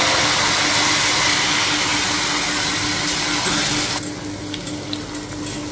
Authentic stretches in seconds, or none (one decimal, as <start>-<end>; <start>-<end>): 0.0-5.7